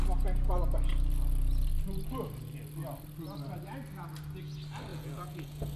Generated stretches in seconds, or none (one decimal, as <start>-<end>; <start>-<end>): 4.9-5.8